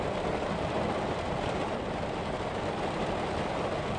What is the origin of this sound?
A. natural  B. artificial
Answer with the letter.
A